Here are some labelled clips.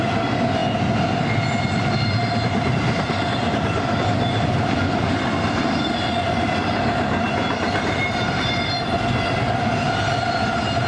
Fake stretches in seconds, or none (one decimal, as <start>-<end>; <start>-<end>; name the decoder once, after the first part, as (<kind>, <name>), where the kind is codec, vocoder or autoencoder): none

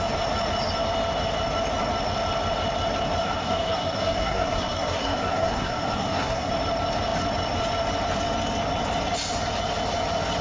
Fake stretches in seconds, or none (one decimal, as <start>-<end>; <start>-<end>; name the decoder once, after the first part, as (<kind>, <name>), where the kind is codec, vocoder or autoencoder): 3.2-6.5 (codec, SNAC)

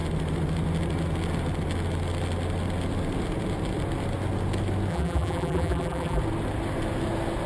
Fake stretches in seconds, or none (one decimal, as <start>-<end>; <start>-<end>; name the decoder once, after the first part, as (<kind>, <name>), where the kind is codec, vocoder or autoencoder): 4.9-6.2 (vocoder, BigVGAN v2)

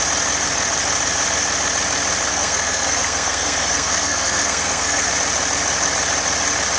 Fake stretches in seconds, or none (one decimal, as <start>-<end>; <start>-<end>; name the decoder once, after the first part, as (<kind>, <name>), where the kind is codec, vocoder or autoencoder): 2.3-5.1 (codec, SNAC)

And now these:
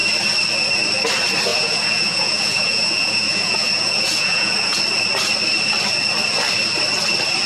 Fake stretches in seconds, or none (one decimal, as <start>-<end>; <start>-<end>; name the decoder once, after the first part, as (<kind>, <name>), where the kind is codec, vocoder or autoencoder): 1.5-4.8 (vocoder, Vocos)